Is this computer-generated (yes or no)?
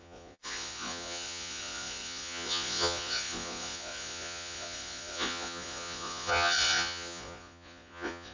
yes